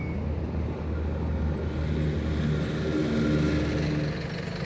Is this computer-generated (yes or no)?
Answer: no